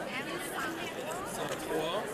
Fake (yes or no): yes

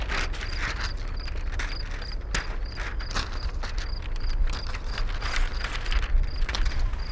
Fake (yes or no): no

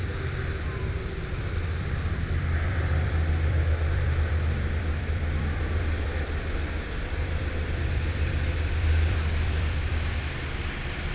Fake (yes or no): yes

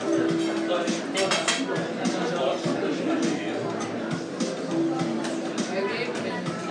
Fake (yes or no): no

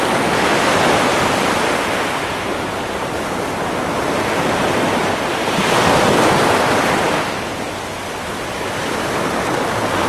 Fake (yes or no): no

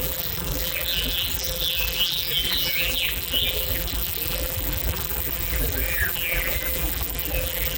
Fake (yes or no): yes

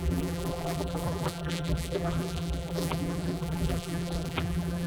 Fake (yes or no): yes